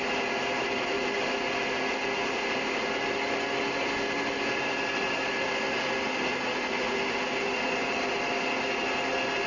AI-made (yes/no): no